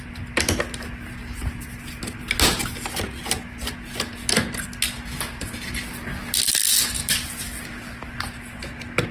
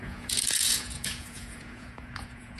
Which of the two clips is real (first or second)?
first